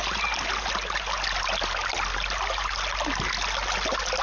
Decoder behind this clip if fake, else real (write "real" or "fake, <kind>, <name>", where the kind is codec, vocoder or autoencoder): real